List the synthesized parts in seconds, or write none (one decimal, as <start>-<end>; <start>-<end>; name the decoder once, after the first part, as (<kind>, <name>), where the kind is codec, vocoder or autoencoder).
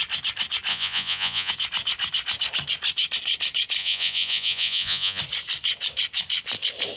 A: 0.7-1.5 (vocoder, Vocos); 3.8-5.2